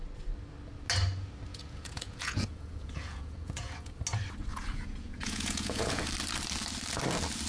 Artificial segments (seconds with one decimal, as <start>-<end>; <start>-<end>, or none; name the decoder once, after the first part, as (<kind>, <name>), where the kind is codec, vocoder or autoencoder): 1.5-3.9 (vocoder, Vocos); 4.5-6.1